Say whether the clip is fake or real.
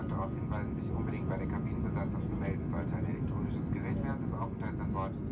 real